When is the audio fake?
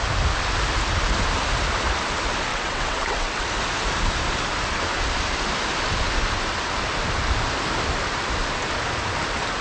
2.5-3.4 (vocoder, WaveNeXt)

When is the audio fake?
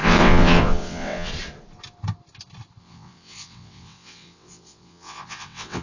0.0-1.3 (vocoder, WaveNeXt); 2.8-5.8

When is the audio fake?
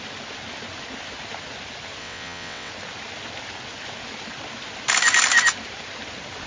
2.0-2.7 (vocoder, WaveNeXt)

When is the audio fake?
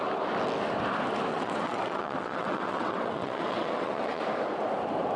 1.3-4.2 (vocoder, WaveNeXt)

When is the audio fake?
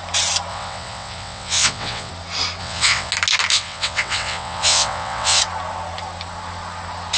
0.5-2.1 (vocoder, WaveNeXt); 2.6-3.1; 3.5-5.4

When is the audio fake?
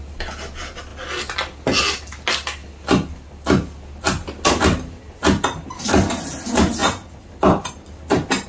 none